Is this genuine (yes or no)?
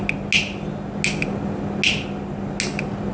yes